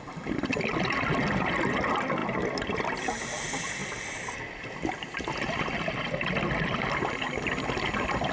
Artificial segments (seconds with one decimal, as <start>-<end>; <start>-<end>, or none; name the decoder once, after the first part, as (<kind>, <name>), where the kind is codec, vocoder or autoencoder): none

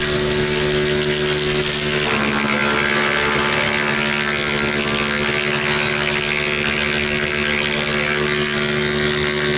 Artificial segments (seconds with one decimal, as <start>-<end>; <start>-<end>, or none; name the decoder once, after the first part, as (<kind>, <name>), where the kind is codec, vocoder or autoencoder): none